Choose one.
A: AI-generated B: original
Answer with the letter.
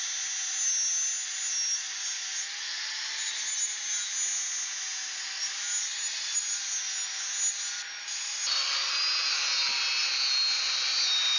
B